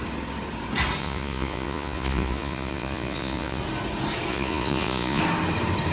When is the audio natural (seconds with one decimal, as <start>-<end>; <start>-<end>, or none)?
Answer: 0.0-1.0; 3.6-4.3; 5.2-5.9